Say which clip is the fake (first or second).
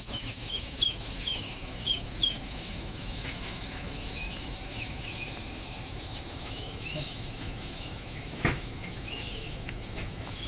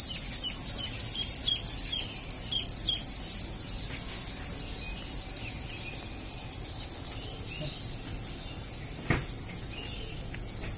first